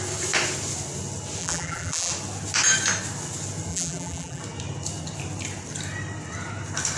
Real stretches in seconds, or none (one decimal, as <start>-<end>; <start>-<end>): 0.0-1.4; 2.1-3.7; 4.4-7.0